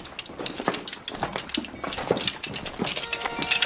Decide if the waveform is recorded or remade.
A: recorded